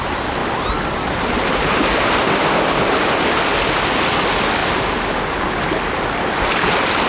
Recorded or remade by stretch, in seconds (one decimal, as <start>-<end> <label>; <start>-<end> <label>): 0.0-4.6 recorded; 4.6-7.1 remade